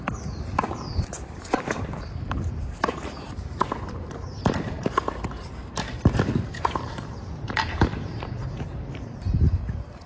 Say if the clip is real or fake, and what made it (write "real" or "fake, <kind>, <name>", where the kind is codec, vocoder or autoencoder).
fake, vocoder, BigVGAN v2